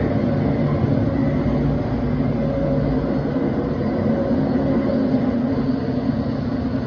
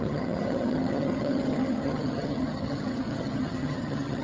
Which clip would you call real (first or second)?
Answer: first